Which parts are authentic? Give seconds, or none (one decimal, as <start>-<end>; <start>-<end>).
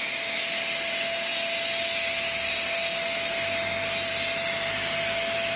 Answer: 0.0-5.6